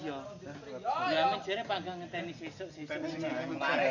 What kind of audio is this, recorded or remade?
recorded